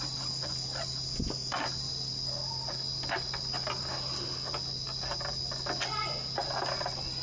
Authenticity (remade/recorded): recorded